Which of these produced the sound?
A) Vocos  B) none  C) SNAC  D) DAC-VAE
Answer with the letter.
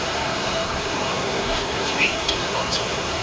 C